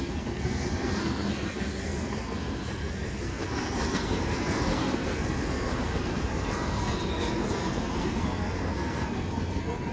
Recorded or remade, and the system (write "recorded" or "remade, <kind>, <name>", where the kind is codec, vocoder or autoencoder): remade, codec, SNAC